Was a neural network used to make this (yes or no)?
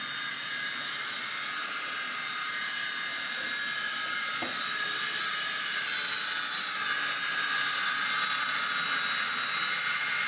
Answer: no